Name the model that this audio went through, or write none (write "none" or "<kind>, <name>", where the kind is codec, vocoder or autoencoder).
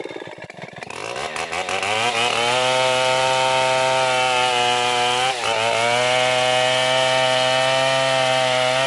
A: none